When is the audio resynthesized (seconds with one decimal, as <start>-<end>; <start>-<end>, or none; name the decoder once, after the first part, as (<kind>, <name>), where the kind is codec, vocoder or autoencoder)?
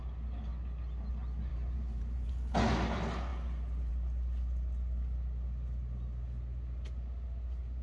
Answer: 1.5-2.3 (vocoder, BigVGAN v2)